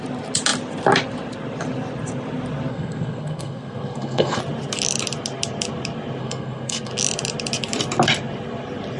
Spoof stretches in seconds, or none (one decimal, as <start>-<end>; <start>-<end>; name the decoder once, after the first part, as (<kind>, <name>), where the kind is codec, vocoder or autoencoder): 2.7-4.4 (codec, SNAC); 6.2-6.9

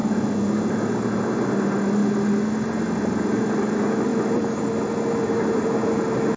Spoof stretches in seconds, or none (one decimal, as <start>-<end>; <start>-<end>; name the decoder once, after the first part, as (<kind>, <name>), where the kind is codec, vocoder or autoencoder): none

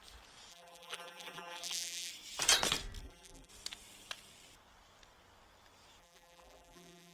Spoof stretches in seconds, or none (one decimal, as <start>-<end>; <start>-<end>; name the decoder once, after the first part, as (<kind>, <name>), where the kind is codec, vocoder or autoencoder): 0.5-2.1 (vocoder, BigVGAN v2); 3.0-3.5; 6.0-7.1